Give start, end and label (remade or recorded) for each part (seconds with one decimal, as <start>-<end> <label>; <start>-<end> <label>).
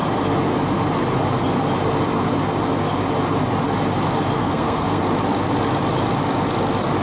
0.0-4.4 recorded; 4.4-5.0 remade; 5.0-7.0 recorded